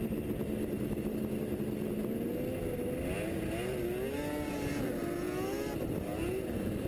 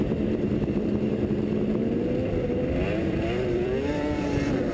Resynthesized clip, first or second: second